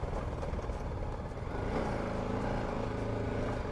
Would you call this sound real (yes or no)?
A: yes